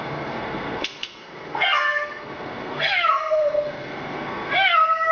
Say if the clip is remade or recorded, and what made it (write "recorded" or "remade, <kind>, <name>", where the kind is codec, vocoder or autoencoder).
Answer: remade, codec, SNAC